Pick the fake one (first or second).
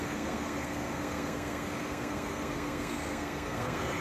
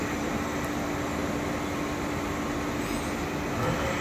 first